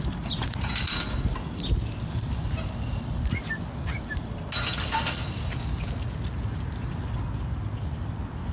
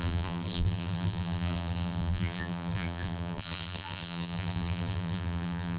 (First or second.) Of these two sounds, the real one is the first